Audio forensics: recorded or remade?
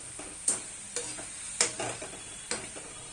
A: recorded